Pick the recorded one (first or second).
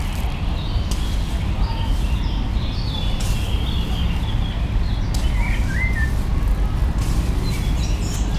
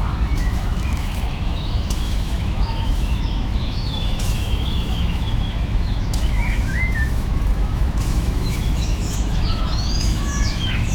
first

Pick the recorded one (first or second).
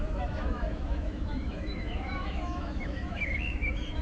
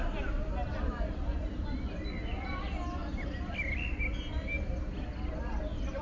second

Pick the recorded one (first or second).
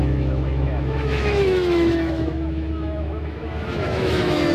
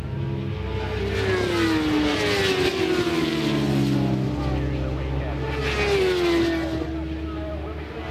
second